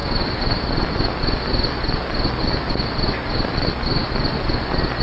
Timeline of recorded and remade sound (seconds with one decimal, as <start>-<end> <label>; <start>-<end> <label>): 0.0-5.0 recorded